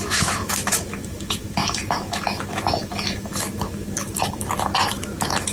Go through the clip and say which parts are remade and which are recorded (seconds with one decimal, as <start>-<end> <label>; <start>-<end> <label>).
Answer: 0.0-5.5 remade